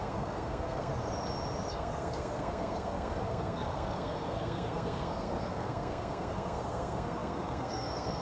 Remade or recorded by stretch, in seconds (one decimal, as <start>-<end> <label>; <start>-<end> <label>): 0.0-0.9 remade; 0.9-1.7 recorded; 1.7-8.2 remade